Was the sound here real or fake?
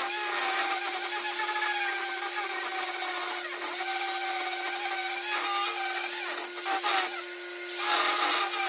real